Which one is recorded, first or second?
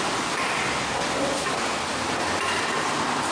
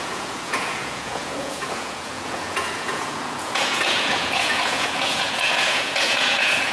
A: first